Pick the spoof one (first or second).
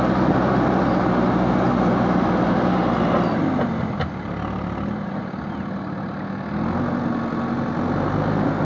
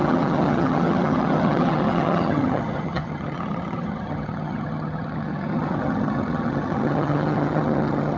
second